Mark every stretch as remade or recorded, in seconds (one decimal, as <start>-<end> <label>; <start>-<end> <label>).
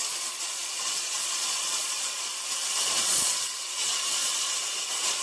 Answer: 0.0-2.3 remade; 2.3-2.9 recorded; 2.9-5.2 remade